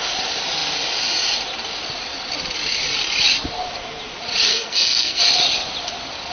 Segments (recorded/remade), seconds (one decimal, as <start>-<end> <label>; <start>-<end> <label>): 0.0-4.5 recorded; 4.5-5.2 remade; 5.2-6.3 recorded